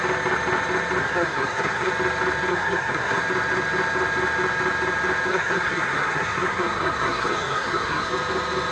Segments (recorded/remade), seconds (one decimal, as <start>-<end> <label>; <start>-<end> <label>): 0.0-1.0 recorded; 1.0-1.9 remade; 1.9-2.5 recorded; 2.5-3.2 remade; 3.2-5.3 recorded; 5.3-8.1 remade; 8.1-8.7 recorded